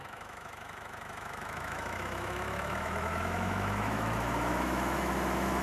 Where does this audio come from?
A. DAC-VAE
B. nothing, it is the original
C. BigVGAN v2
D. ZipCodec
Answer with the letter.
A